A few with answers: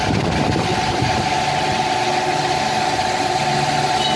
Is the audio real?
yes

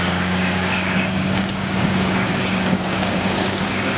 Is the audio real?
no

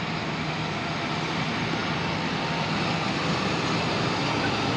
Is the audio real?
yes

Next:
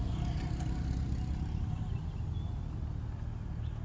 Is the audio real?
yes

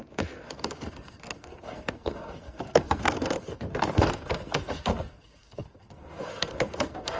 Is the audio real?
no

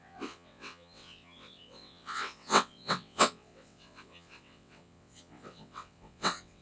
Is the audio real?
no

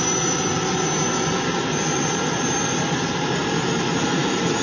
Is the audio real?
no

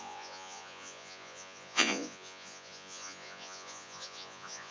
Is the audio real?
no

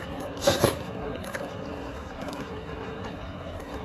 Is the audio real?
no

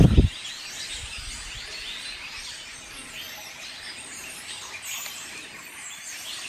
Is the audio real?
yes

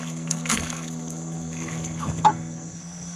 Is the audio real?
no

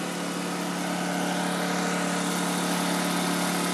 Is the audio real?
yes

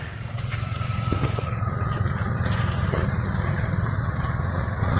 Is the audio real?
no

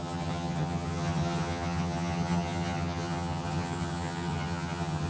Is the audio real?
no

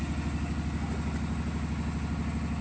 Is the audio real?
yes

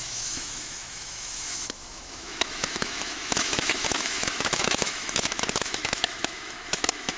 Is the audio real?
no